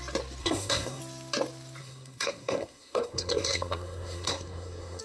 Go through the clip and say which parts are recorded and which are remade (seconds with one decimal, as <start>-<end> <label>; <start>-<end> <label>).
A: 0.0-0.4 recorded; 0.4-1.0 remade; 1.0-1.8 recorded; 1.8-5.0 remade